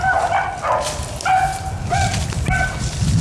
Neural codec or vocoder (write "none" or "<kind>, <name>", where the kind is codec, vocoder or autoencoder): none